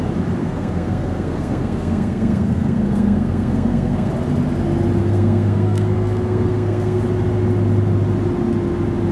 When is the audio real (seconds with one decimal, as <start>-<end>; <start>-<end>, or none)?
0.0-0.4; 4.1-5.0; 7.0-9.1